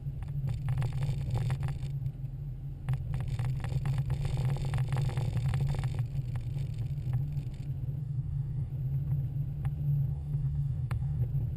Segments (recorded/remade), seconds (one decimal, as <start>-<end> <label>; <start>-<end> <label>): 0.0-8.0 recorded; 8.0-8.7 remade; 8.7-10.1 recorded; 10.1-11.2 remade; 11.2-11.6 recorded